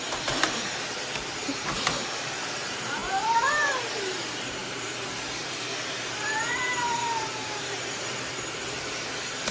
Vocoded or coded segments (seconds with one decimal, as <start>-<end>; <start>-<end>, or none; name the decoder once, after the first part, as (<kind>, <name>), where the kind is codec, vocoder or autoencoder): 0.0-9.5 (vocoder, BigVGAN v2)